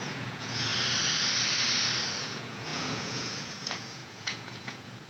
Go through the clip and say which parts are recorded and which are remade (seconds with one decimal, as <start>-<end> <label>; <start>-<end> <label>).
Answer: 0.0-0.7 remade; 0.7-2.2 recorded; 2.2-5.1 remade

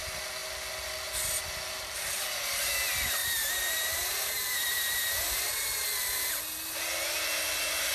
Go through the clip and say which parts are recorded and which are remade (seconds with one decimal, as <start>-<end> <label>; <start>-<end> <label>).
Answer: 0.0-3.2 recorded; 3.2-6.3 remade; 6.3-7.9 recorded